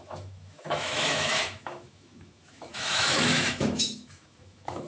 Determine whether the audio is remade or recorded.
remade